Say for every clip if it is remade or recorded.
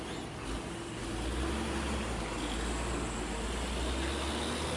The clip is recorded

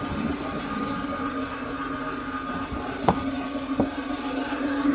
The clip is recorded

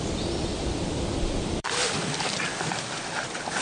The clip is remade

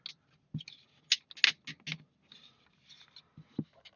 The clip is recorded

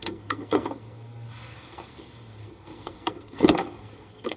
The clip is remade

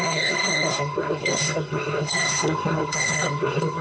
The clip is remade